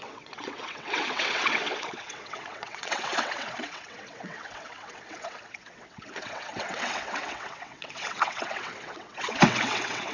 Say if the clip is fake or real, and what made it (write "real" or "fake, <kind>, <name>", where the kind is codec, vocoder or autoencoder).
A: fake, vocoder, WaveNeXt